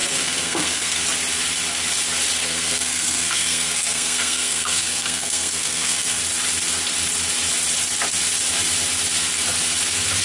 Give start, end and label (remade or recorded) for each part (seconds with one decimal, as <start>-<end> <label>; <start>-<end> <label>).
0.0-1.0 remade; 1.0-2.4 recorded; 2.4-6.2 remade; 6.2-10.2 recorded

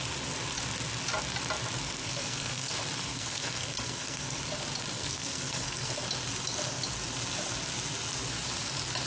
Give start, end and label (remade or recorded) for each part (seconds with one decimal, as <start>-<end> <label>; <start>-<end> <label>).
0.0-2.0 recorded; 2.0-2.7 remade; 2.7-3.1 recorded; 3.1-4.4 remade; 4.4-4.9 recorded; 4.9-6.0 remade; 6.0-9.1 recorded

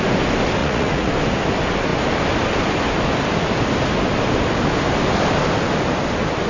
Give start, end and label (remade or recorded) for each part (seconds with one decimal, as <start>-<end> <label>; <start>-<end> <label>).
0.0-0.6 recorded; 0.6-1.1 remade; 1.1-6.5 recorded

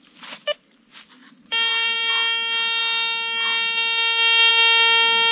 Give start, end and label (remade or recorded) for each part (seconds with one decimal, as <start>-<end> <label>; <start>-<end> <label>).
0.0-1.2 recorded; 1.2-2.1 remade; 2.1-5.3 recorded

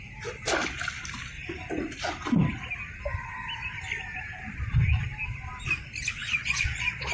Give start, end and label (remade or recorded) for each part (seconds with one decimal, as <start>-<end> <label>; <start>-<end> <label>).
0.0-6.2 recorded; 6.2-7.1 remade